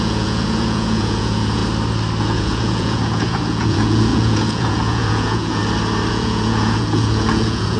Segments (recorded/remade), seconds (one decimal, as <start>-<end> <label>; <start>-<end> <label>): 0.0-1.6 remade; 1.6-2.2 recorded; 2.2-5.6 remade; 5.6-6.1 recorded; 6.1-7.8 remade